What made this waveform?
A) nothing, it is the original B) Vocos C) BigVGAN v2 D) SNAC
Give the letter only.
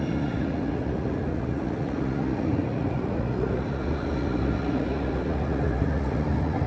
B